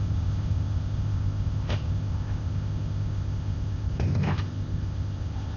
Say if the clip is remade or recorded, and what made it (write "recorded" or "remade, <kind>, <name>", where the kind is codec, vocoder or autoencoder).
remade, codec, ZipCodec